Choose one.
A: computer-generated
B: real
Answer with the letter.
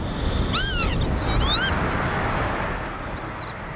B